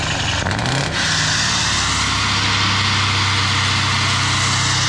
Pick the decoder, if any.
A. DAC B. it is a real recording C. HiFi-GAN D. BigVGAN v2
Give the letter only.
B